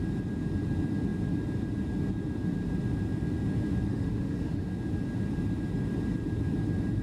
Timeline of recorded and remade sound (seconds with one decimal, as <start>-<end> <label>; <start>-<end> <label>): 0.0-3.9 recorded; 3.9-4.7 remade; 4.7-7.0 recorded